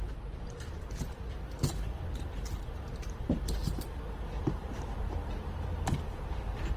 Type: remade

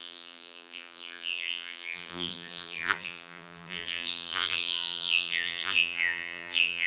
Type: remade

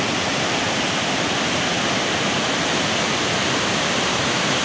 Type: recorded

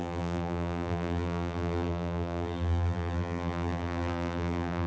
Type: remade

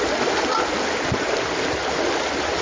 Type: recorded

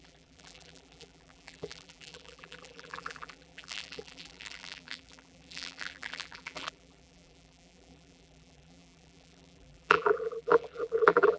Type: remade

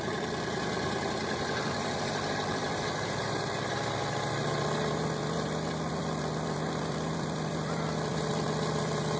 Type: remade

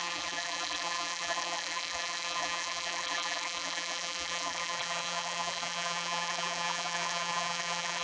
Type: remade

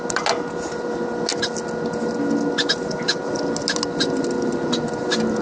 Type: recorded